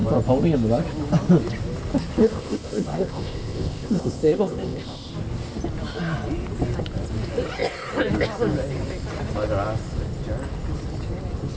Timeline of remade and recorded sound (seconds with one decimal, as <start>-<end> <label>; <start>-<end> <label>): 0.0-2.2 recorded; 2.2-5.1 remade; 5.1-11.6 recorded

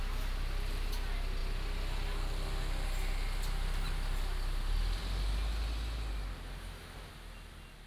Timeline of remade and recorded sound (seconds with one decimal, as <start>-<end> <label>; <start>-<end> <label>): 0.0-7.9 recorded

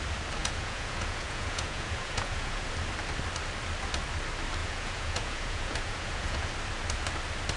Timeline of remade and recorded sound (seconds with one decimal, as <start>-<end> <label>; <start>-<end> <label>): 0.0-0.4 recorded; 0.4-2.7 remade; 2.7-4.6 recorded; 4.6-6.5 remade; 6.5-7.6 recorded

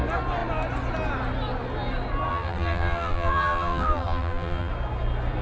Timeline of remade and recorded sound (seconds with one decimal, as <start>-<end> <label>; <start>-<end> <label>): 0.0-2.3 recorded; 2.3-4.7 remade; 4.7-5.4 recorded

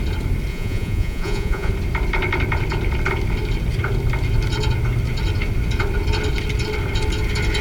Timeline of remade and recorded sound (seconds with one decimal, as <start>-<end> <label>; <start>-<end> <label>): 0.0-0.5 recorded; 0.5-1.7 remade; 1.7-7.6 recorded

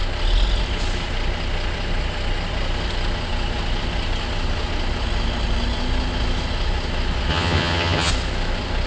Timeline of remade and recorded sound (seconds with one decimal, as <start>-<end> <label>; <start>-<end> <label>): 0.0-7.3 recorded; 7.3-8.1 remade; 8.1-8.9 recorded